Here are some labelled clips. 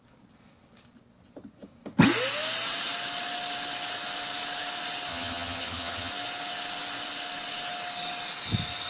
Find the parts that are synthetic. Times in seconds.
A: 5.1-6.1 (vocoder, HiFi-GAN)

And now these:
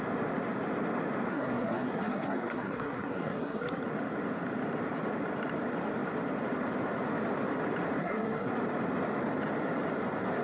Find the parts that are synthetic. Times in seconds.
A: 1.3-3.8 (codec, SNAC); 8.0-8.5

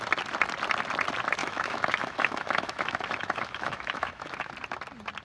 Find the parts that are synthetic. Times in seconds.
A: 1.4-4.5 (autoencoder, DAC-VAE)

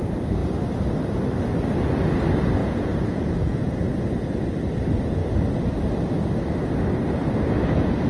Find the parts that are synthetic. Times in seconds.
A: 2.6-3.7 (vocoder, Vocos)